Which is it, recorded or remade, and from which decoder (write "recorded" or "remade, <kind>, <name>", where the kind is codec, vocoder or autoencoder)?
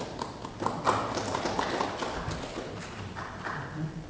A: recorded